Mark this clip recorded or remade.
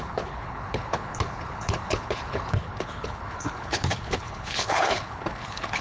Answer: remade